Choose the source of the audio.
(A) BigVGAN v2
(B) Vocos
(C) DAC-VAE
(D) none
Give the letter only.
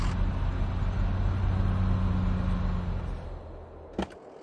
D